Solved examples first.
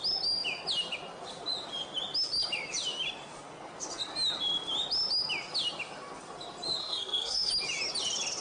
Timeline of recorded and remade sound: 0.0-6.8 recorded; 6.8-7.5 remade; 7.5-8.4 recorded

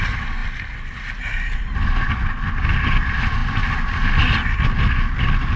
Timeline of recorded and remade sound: 0.0-5.6 recorded